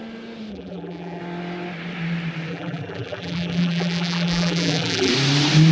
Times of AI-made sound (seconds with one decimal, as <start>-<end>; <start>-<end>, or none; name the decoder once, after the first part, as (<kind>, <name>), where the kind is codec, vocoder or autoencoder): 0.5-1.2 (vocoder, BigVGAN v2); 2.5-5.1